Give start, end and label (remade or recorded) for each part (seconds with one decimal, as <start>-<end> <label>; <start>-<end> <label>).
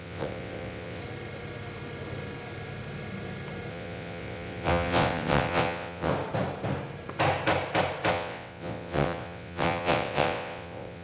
0.0-1.0 remade; 1.0-3.7 recorded; 3.7-6.1 remade; 6.1-8.1 recorded; 8.1-11.0 remade